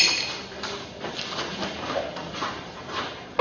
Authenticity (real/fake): real